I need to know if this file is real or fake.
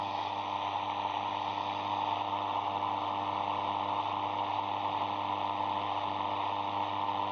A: real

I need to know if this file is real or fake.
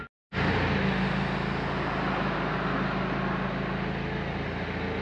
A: real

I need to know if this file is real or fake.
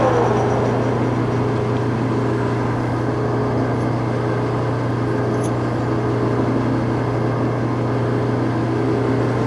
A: real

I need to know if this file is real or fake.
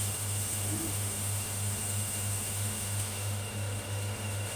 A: fake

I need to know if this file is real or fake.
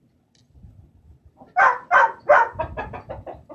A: real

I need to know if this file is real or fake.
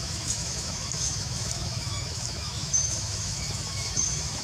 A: fake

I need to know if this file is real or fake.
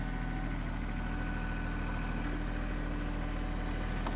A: real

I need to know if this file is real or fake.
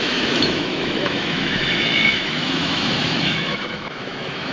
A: fake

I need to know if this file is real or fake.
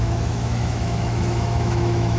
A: fake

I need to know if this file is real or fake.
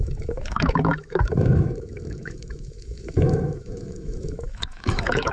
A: fake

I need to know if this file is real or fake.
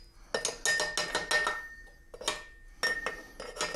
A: real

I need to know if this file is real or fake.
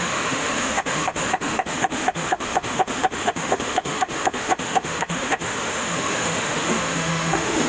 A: fake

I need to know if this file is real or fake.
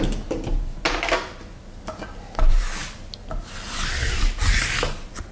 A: real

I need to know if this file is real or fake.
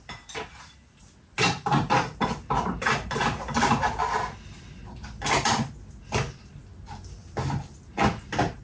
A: real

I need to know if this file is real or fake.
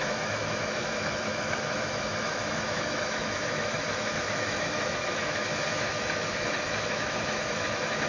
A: fake